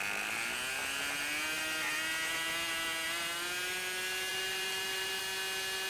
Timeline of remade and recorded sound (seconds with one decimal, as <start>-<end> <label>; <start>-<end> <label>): 0.0-4.3 recorded; 4.3-5.2 remade; 5.2-5.9 recorded